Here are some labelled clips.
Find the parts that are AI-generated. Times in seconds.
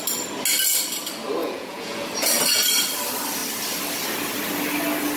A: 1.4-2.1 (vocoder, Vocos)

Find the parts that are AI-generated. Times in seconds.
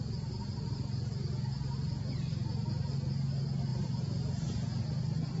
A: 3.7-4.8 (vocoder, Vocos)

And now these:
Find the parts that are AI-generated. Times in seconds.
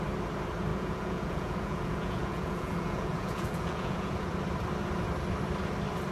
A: 0.7-4.4 (vocoder, Vocos)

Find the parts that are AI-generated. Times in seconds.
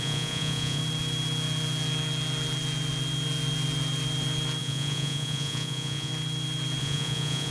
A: 0.0-0.8 (vocoder, Vocos); 4.6-6.1; 6.8-7.5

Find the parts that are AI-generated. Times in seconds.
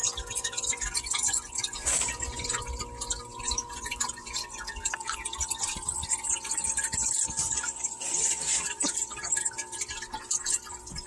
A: none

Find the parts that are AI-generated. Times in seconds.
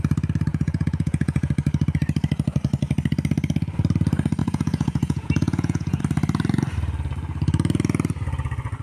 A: 0.5-1.5 (vocoder, Vocos); 4.4-6.0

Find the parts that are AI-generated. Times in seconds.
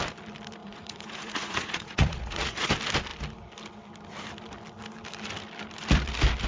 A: 0.6-2.7 (vocoder, Vocos)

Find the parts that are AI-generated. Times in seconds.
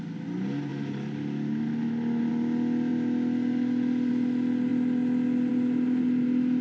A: none